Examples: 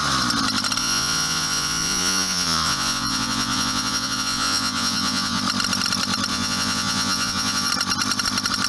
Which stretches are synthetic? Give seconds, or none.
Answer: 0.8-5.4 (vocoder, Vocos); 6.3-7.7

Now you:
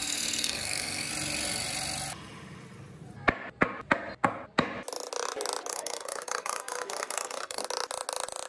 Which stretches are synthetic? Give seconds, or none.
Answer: 0.0-1.1 (codec, SNAC); 5.7-7.6

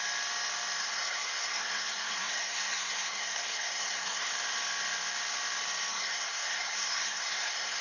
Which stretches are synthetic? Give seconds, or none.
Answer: 0.8-4.3 (codec, SNAC); 5.9-7.8

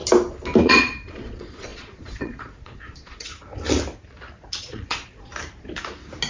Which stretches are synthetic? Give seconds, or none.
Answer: 0.6-3.3 (vocoder, Vocos); 4.6-5.3

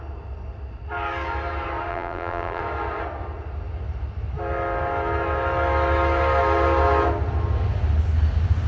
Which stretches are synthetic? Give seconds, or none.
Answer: 1.9-2.6 (vocoder, BigVGAN v2)

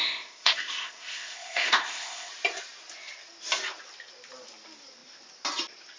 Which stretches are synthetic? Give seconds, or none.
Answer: 0.0-2.3 (codec, ZipCodec)